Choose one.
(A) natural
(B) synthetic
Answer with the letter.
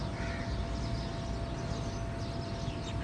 A